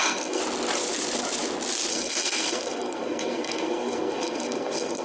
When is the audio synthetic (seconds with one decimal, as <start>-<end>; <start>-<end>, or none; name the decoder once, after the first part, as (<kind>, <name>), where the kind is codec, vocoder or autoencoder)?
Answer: 0.0-0.4 (codec, SNAC); 1.9-5.0